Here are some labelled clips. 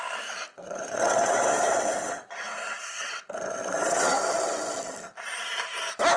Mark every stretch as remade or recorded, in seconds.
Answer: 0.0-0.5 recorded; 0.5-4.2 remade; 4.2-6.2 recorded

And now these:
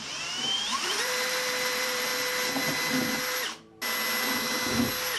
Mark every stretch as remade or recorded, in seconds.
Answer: 0.0-2.1 remade; 2.1-5.2 recorded

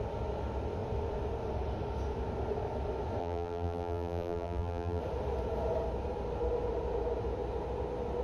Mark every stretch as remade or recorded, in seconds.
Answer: 0.0-3.2 recorded; 3.2-5.0 remade; 5.0-8.2 recorded

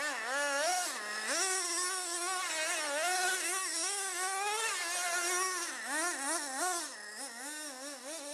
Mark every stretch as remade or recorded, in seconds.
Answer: 0.0-8.3 recorded

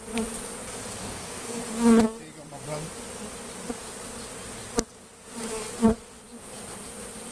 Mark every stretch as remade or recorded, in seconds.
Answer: 0.0-1.0 recorded; 1.0-1.6 remade; 1.6-7.3 recorded

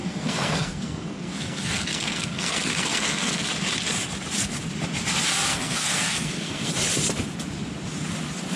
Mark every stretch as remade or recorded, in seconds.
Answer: 0.0-3.5 remade; 3.5-5.5 recorded; 5.5-6.7 remade; 6.7-8.6 recorded

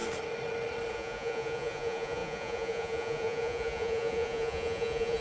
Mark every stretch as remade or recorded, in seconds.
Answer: 0.0-0.9 recorded; 0.9-5.2 remade

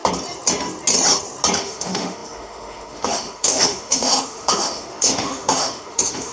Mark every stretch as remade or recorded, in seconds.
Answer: 0.0-1.6 recorded; 1.6-6.3 remade